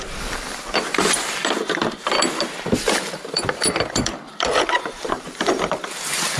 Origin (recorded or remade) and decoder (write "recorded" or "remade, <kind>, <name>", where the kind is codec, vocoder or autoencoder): remade, vocoder, BigVGAN v2